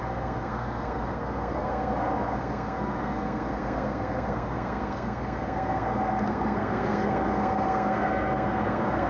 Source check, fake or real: fake